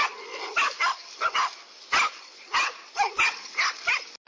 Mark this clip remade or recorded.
recorded